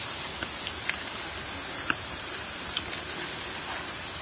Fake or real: real